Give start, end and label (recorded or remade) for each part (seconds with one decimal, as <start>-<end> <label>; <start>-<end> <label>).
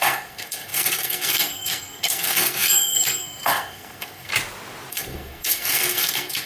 0.0-4.3 remade; 4.3-4.9 recorded; 4.9-6.5 remade